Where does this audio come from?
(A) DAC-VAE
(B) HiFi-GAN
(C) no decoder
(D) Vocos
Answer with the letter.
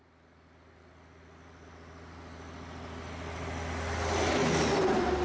C